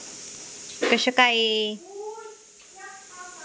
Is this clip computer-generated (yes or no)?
no